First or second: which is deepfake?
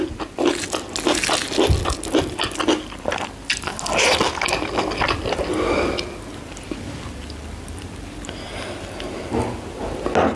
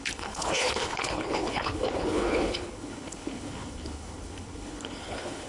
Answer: second